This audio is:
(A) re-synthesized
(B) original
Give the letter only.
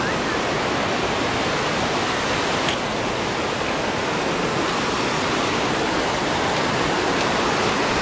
B